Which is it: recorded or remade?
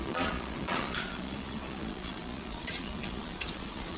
remade